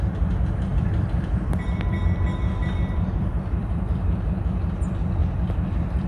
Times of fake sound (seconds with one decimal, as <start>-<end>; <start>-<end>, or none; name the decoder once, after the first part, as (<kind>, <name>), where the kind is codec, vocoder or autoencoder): 0.7-4.4 (vocoder, BigVGAN v2); 5.2-6.1